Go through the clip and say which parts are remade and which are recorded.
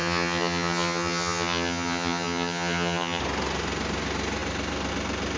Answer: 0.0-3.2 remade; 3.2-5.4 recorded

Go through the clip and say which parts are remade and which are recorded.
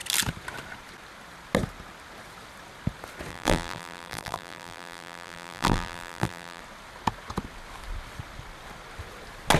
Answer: 0.0-3.3 recorded; 3.3-6.6 remade; 6.6-9.6 recorded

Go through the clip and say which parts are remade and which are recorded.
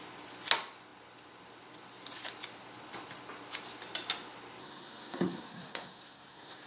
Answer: 0.0-4.6 recorded; 4.6-6.7 remade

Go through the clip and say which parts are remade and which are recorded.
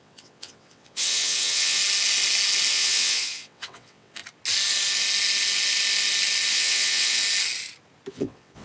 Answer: 0.0-1.8 remade; 1.8-2.7 recorded; 2.7-4.2 remade; 4.2-6.5 recorded; 6.5-7.2 remade; 7.2-8.1 recorded; 8.1-8.6 remade